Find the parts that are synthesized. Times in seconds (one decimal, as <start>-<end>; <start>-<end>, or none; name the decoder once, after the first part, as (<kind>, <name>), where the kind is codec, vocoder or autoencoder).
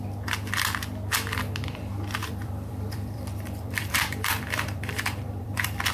2.2-5.9 (vocoder, BigVGAN v2)